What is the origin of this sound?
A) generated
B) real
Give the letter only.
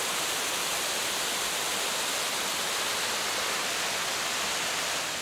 B